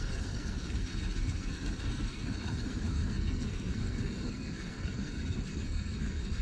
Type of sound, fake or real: fake